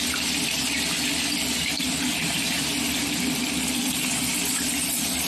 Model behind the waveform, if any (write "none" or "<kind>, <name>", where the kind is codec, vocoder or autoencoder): none